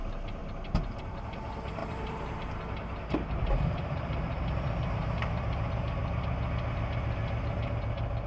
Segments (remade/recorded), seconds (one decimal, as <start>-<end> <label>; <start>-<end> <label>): 0.0-0.4 remade; 0.4-1.0 recorded; 1.0-6.0 remade; 6.0-6.7 recorded; 6.7-8.3 remade